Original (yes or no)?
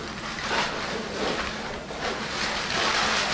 yes